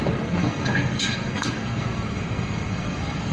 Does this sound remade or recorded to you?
remade